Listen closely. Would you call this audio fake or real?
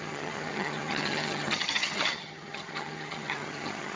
fake